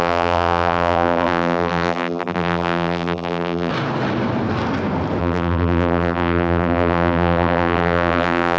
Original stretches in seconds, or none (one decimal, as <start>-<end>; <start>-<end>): 3.7-5.2